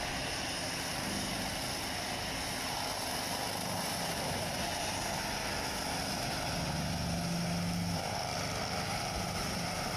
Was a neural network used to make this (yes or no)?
no